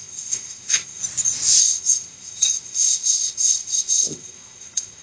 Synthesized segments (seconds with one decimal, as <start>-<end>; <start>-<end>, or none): 0.0-1.0; 1.6-5.0